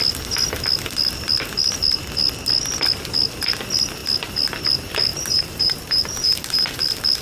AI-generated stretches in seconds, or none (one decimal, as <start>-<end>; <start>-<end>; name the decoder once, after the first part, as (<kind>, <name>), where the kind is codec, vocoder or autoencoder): 5.1-6.8 (vocoder, BigVGAN v2)